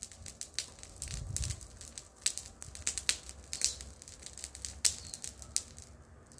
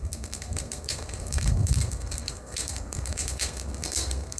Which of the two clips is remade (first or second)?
second